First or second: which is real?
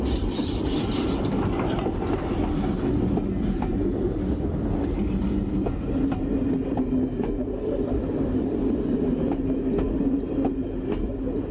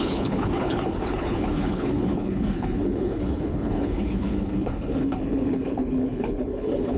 first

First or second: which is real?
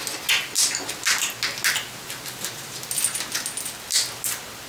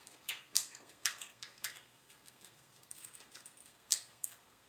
first